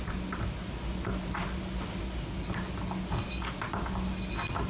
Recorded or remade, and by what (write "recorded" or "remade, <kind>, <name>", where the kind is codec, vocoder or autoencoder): recorded